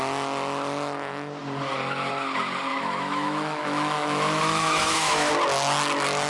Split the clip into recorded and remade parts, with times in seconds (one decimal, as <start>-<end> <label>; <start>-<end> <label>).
0.0-2.7 recorded; 2.7-5.3 remade; 5.3-6.3 recorded